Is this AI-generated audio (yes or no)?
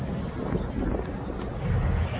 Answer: no